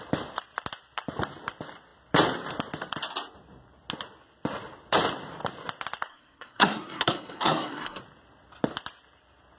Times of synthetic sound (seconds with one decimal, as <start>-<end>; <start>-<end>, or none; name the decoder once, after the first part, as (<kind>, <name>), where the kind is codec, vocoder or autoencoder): 6.1-8.0 (codec, SNAC)